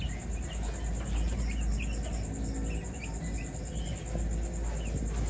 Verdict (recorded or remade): recorded